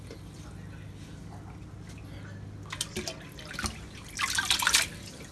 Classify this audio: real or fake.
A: real